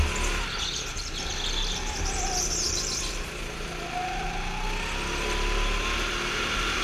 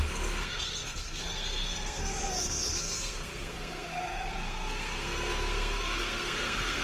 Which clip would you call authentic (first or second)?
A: first